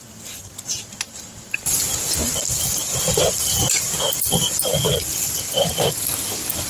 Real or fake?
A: real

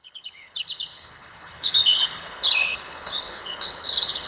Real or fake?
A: fake